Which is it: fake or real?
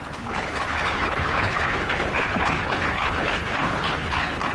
fake